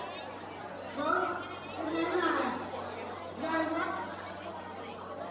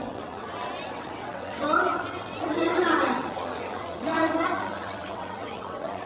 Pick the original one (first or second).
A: first